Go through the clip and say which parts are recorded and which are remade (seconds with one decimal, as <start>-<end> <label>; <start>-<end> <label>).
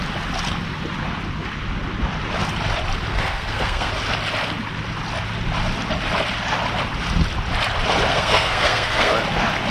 0.0-3.1 recorded; 3.1-3.9 remade; 3.9-8.1 recorded; 8.1-9.1 remade; 9.1-9.7 recorded